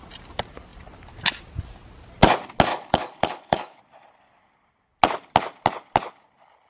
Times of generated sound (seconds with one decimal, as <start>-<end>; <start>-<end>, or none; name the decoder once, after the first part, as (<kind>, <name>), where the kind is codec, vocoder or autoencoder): 2.7-3.8 (codec, DAC)